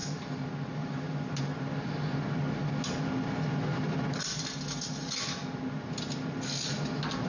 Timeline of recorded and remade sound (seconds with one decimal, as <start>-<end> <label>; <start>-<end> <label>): 0.0-1.6 remade; 1.6-7.3 recorded